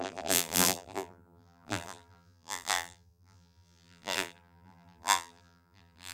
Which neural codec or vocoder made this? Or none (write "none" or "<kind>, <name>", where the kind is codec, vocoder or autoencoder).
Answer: vocoder, BigVGAN v2